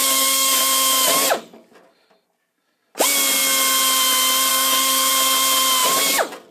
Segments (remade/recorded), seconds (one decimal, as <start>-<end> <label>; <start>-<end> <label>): 0.0-0.6 remade; 0.6-4.5 recorded; 4.5-5.1 remade; 5.1-6.5 recorded